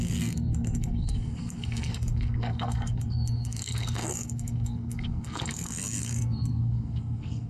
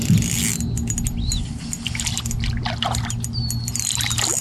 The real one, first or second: second